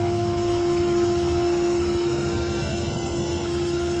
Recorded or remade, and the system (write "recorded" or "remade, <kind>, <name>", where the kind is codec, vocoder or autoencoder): remade, codec, SNAC